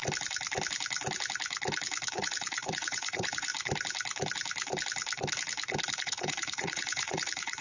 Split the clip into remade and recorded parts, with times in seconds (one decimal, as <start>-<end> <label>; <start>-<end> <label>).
0.0-2.1 recorded; 2.1-3.5 remade; 3.5-6.0 recorded; 6.0-7.6 remade